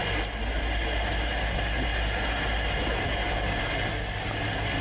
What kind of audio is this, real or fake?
real